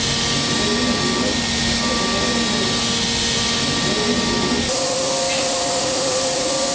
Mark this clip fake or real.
real